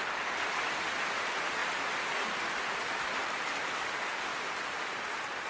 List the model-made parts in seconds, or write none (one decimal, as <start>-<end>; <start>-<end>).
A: none